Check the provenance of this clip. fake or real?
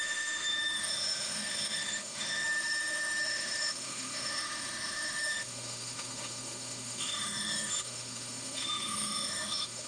fake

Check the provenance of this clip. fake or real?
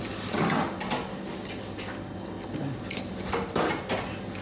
real